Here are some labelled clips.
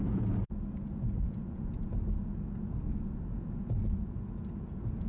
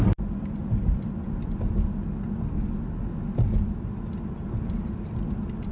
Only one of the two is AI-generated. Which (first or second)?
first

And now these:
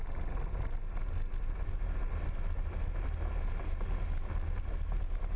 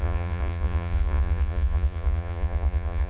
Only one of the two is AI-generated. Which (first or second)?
second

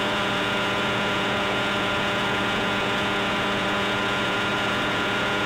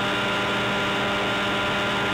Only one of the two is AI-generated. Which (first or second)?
first